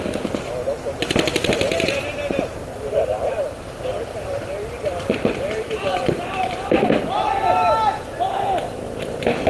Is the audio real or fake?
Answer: fake